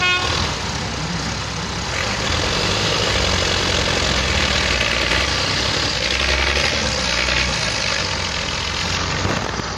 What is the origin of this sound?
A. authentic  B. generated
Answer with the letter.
A